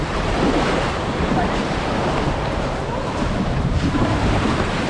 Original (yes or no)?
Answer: no